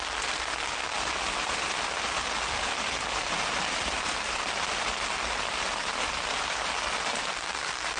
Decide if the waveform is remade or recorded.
recorded